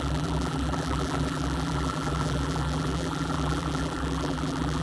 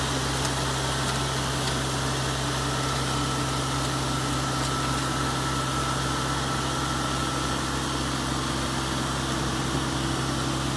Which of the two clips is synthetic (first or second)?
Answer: first